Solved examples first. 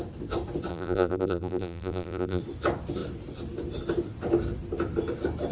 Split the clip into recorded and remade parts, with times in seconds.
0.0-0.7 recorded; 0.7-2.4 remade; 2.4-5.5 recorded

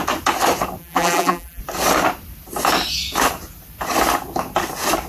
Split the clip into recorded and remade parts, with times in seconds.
0.0-0.8 recorded; 0.8-1.6 remade; 1.6-5.1 recorded

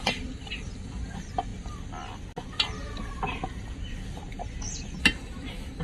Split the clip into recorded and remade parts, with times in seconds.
0.0-1.5 remade; 1.5-5.0 recorded; 5.0-5.8 remade

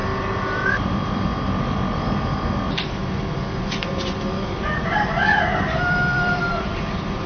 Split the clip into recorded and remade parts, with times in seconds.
0.0-0.8 recorded; 0.8-3.0 remade; 3.0-3.6 recorded; 3.6-7.3 remade

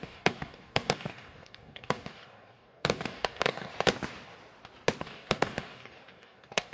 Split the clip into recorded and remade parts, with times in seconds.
0.0-3.7 remade; 3.7-5.0 recorded; 5.0-6.7 remade

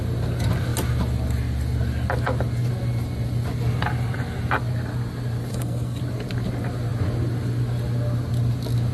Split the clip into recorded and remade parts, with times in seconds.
0.0-5.5 recorded; 5.5-6.0 remade; 6.0-8.9 recorded

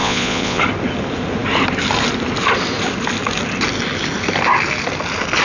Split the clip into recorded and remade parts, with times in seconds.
0.0-0.6 remade; 0.6-5.4 recorded